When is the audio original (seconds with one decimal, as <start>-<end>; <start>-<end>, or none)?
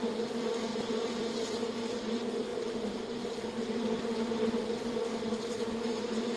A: 0.0-5.5; 6.0-6.4